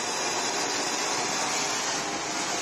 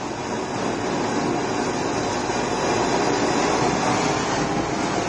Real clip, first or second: first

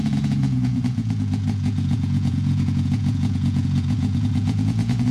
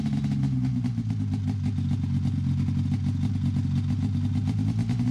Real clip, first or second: second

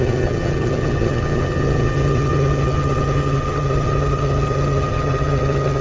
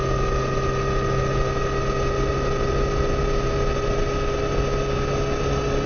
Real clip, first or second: second